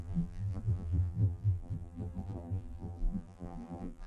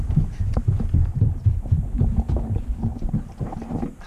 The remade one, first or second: first